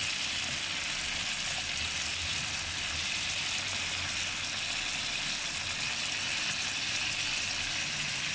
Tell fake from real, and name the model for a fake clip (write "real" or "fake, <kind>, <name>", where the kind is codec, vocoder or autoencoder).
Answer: real